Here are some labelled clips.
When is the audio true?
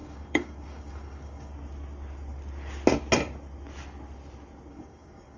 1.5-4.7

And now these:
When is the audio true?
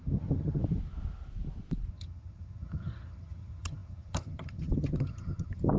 0.6-1.9